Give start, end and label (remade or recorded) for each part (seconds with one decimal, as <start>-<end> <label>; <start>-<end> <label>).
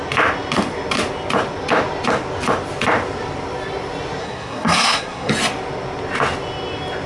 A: 0.0-4.2 recorded; 4.2-5.3 remade; 5.3-7.1 recorded